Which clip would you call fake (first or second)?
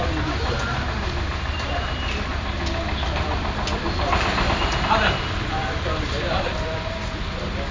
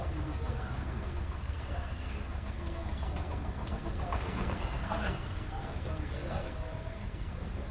second